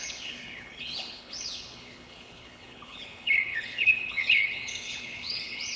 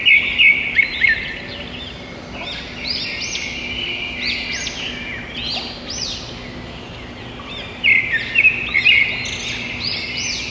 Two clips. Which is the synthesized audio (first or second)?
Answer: first